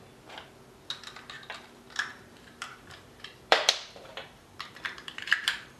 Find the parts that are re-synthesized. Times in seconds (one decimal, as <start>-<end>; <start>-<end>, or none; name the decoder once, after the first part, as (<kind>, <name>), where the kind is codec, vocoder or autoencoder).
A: 2.1-5.8 (vocoder, BigVGAN v2)